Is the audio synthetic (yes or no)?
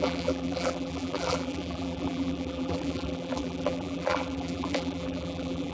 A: yes